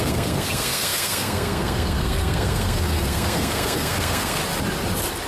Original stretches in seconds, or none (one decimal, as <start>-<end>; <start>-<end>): 4.4-5.3